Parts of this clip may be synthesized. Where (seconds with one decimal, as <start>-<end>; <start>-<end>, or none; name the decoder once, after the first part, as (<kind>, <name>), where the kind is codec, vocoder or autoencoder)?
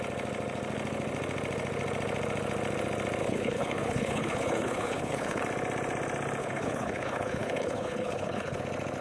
3.2-5.4 (codec, HILCodec); 6.4-8.6